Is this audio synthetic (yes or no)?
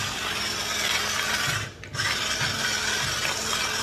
no